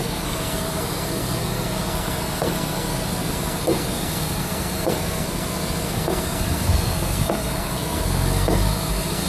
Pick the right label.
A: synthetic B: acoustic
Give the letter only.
A